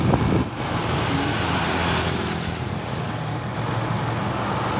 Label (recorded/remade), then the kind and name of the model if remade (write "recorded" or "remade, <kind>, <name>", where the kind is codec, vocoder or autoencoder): recorded